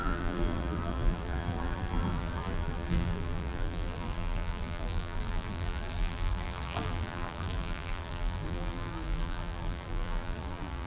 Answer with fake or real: fake